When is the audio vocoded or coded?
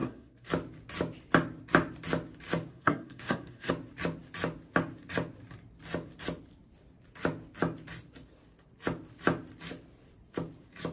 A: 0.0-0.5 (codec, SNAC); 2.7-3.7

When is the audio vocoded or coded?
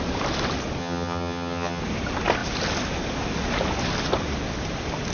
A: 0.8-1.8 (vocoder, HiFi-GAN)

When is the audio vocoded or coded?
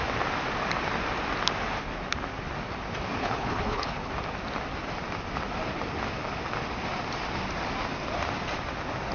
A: 3.2-4.1 (codec, HILCodec)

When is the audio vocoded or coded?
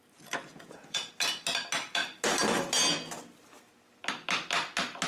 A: 0.5-1.1 (vocoder, Vocos)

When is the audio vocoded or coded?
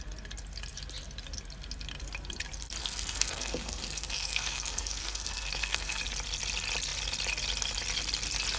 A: 2.8-6.0 (codec, SNAC)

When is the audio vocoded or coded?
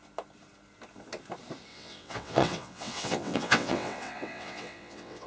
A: 1.7-5.3 (vocoder, WaveNeXt)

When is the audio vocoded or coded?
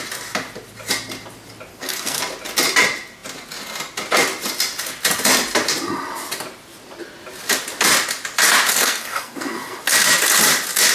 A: 1.7-2.2 (codec, SNAC); 8.7-9.8